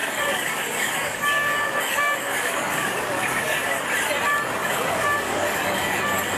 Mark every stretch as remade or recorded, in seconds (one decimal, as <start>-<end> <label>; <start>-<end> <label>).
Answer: 0.0-3.8 remade; 3.8-4.6 recorded; 4.6-6.0 remade; 6.0-6.4 recorded